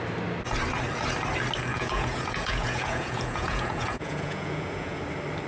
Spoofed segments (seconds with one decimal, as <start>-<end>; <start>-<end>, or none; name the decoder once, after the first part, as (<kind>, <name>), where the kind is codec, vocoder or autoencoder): 1.7-5.0 (vocoder, Vocos)